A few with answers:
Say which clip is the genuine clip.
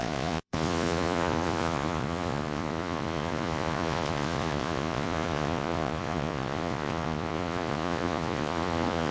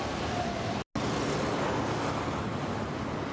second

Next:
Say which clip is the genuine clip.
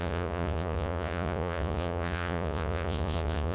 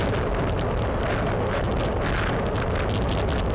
second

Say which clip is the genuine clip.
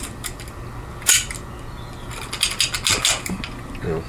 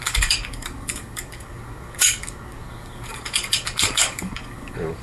first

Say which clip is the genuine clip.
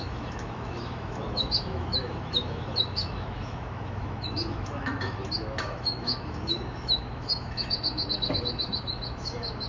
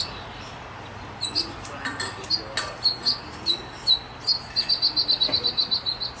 second